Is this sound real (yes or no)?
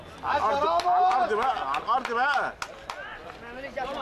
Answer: yes